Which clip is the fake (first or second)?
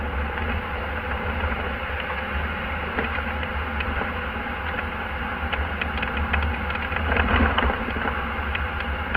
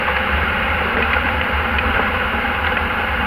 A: second